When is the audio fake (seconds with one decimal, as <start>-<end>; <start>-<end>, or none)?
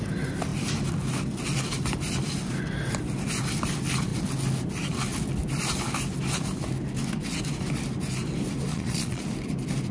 8.7-9.2